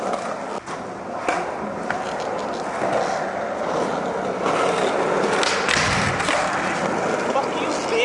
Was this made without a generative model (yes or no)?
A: yes